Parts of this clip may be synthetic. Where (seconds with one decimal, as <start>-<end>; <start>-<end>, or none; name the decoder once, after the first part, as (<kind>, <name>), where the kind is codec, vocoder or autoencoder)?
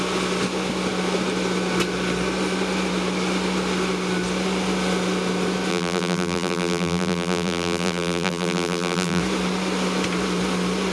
5.7-9.2 (vocoder, BigVGAN v2)